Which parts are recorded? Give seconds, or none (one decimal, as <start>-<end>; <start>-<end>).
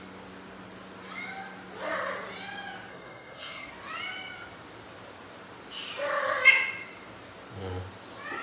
0.0-2.9; 3.7-8.4